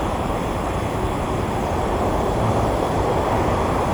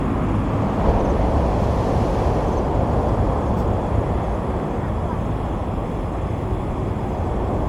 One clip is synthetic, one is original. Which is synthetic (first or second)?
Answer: first